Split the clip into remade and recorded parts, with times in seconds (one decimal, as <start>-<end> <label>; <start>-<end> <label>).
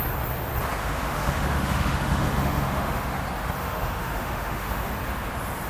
0.0-0.8 recorded; 0.8-3.2 remade; 3.2-3.6 recorded; 3.6-4.9 remade; 4.9-5.7 recorded